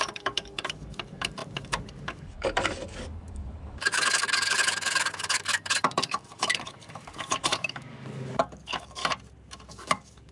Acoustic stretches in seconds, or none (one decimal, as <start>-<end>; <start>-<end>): 9.0-9.7